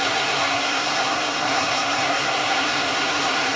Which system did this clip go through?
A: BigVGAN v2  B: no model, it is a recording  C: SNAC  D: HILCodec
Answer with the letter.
C